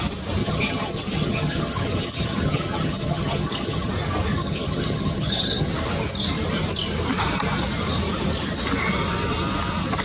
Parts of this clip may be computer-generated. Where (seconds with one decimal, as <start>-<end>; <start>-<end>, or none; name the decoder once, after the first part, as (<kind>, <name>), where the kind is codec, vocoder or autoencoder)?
0.4-3.9 (vocoder, HiFi-GAN); 4.3-5.7